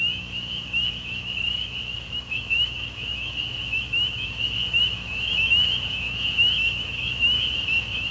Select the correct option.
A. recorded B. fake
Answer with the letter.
B